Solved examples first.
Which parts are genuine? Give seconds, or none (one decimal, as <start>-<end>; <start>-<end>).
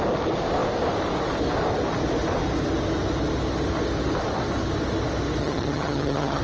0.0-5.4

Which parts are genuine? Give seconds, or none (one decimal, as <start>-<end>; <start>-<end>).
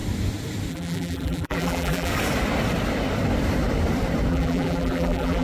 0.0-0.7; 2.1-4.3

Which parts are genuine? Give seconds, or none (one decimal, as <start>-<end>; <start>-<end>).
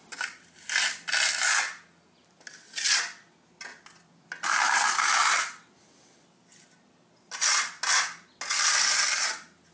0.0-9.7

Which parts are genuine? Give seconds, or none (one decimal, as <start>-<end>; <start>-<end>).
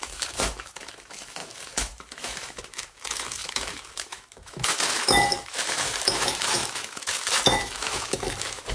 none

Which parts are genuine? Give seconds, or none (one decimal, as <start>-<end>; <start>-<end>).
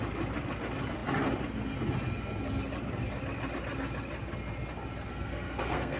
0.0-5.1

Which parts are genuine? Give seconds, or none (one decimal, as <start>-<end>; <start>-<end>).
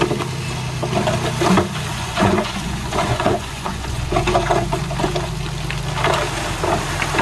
0.0-1.9; 5.3-7.2